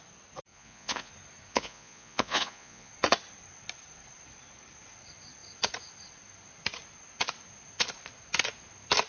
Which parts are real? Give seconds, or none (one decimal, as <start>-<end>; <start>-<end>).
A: 0.0-0.5; 1.1-1.5; 2.9-9.1